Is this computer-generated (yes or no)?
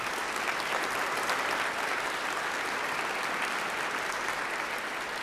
no